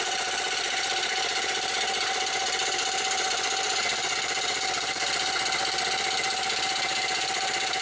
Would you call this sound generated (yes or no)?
yes